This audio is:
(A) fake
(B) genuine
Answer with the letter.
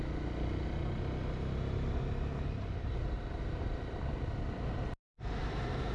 B